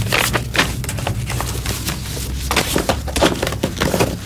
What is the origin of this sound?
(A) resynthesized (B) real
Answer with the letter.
B